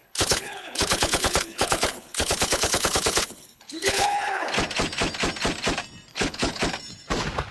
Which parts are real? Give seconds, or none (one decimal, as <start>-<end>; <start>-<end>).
4.5-6.1; 6.6-7.5

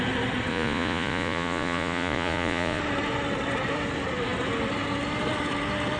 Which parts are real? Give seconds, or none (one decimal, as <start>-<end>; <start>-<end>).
0.0-0.5; 2.8-6.0

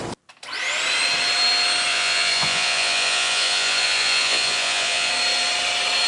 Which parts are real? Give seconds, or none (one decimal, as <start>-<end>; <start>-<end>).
0.0-1.9; 5.1-6.1